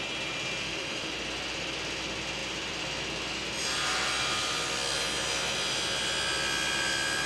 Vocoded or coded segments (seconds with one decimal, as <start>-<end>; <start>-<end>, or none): 0.6-1.1